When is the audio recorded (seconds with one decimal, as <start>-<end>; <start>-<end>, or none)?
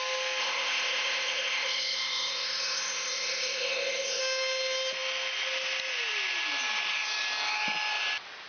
0.0-0.4; 4.2-8.5